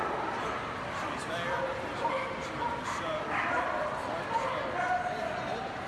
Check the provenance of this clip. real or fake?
real